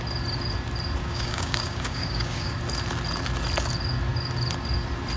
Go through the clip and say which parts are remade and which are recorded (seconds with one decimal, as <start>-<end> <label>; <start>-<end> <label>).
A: 0.0-1.0 recorded; 1.0-2.6 remade; 2.6-5.2 recorded

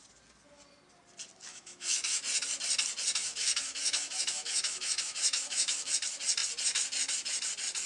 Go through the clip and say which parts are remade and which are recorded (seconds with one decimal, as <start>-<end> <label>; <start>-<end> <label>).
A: 0.0-1.5 recorded; 1.5-2.2 remade; 2.2-3.2 recorded; 3.2-5.9 remade; 5.9-7.9 recorded